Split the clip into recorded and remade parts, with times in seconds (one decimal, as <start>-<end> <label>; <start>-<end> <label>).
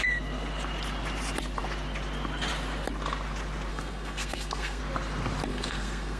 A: 0.0-3.7 recorded; 3.7-4.8 remade; 4.8-5.5 recorded; 5.5-6.2 remade